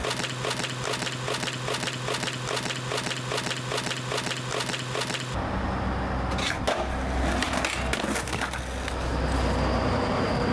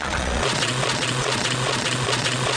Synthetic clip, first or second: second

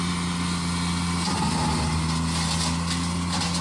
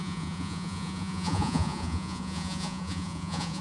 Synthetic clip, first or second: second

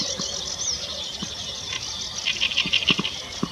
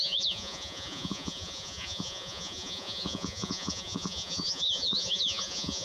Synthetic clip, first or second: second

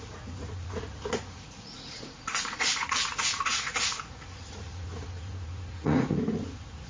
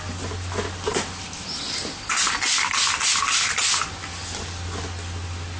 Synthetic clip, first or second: first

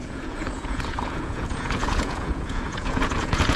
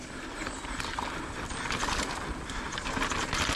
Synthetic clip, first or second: first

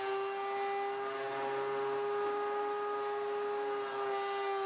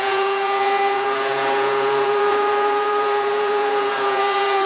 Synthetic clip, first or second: second